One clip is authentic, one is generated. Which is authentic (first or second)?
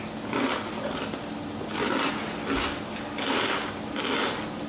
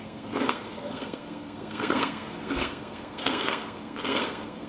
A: first